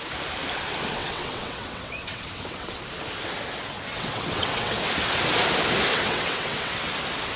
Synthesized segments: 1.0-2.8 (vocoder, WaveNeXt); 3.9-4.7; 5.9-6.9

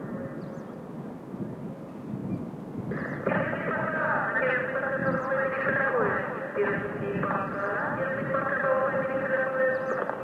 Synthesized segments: none